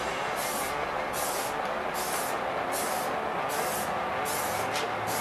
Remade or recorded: recorded